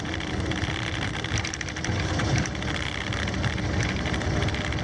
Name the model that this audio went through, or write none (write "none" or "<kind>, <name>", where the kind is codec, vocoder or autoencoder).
none